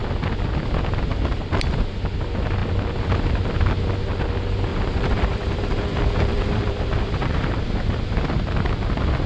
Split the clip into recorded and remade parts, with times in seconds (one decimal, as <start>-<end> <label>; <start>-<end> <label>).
0.0-4.7 recorded; 4.7-8.2 remade; 8.2-9.3 recorded